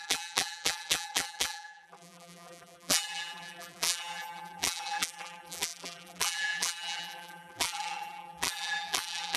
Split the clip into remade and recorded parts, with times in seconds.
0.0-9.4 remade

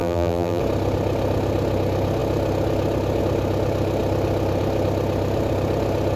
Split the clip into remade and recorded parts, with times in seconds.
0.0-0.6 remade; 0.6-6.2 recorded

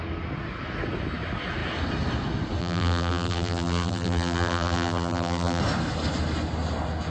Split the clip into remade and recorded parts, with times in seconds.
0.0-2.6 recorded; 2.6-5.6 remade; 5.6-7.1 recorded

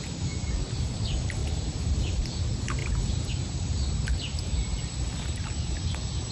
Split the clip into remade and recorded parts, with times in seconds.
0.0-1.4 recorded; 1.4-2.4 remade; 2.4-2.8 recorded; 2.8-3.3 remade; 3.3-6.3 recorded